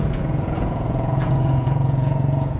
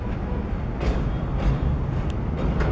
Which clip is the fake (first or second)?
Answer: first